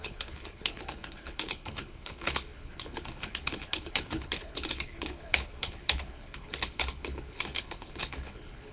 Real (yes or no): no